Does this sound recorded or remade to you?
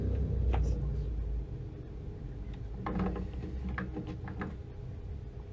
recorded